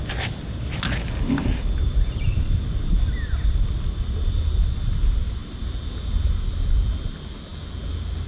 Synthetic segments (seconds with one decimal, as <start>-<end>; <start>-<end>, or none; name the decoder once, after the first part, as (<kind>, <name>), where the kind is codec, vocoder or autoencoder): 1.5-4.4 (vocoder, BigVGAN v2)